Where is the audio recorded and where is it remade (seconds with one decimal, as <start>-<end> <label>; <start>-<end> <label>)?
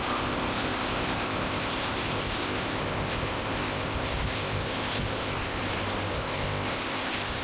0.0-5.6 remade; 5.6-6.1 recorded; 6.1-7.4 remade